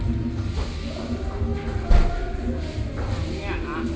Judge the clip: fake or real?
real